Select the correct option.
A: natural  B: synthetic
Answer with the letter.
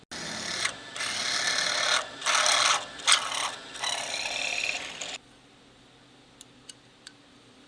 A